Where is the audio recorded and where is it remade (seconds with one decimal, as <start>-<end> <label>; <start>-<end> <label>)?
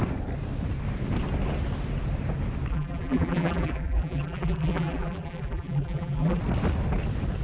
0.0-2.7 recorded; 2.7-6.4 remade; 6.4-7.4 recorded